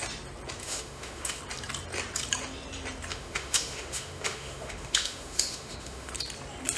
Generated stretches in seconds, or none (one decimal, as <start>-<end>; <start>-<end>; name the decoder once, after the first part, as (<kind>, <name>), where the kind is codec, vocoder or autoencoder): 0.6-1.4 (autoencoder, DAC-VAE); 3.1-6.1